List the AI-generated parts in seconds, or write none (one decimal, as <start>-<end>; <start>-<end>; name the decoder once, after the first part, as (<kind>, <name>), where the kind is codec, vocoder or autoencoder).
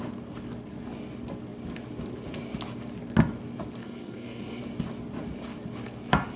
3.8-4.6 (codec, SNAC)